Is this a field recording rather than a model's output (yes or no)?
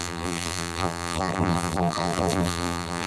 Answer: no